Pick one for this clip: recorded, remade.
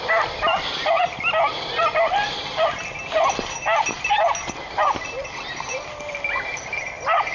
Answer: recorded